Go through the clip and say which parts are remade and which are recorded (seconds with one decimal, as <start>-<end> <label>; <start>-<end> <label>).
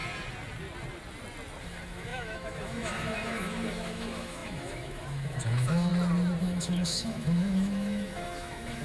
0.0-1.6 recorded; 1.6-5.9 remade; 5.9-6.4 recorded; 6.4-8.8 remade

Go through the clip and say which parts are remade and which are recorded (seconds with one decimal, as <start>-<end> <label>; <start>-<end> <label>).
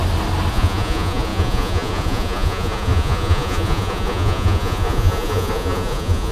0.0-0.5 recorded; 0.5-6.3 remade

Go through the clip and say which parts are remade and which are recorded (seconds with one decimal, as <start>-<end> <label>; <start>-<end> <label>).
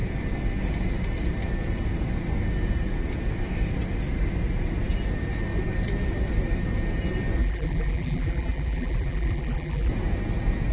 0.0-7.4 recorded; 7.4-9.9 remade; 9.9-10.7 recorded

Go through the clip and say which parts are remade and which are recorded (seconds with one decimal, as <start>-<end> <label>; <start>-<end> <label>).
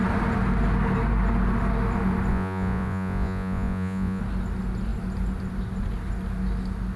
0.0-2.3 recorded; 2.3-4.2 remade; 4.2-7.0 recorded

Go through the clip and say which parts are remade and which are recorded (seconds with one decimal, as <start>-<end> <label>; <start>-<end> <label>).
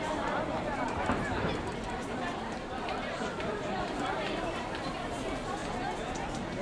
0.0-5.6 remade; 5.6-6.6 recorded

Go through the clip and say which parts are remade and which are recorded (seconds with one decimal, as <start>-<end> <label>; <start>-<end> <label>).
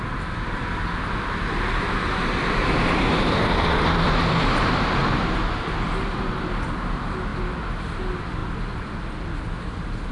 0.0-2.6 recorded; 2.6-5.6 remade; 5.6-10.1 recorded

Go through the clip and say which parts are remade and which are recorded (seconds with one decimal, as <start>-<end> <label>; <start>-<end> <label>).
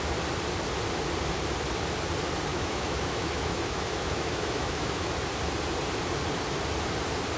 0.0-2.5 recorded; 2.5-5.1 remade; 5.1-7.4 recorded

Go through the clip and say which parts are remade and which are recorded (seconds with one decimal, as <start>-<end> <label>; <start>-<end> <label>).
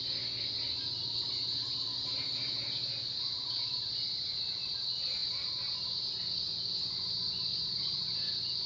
0.0-7.5 recorded; 7.5-8.1 remade; 8.1-8.7 recorded